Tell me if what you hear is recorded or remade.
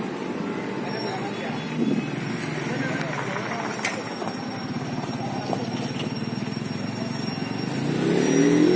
recorded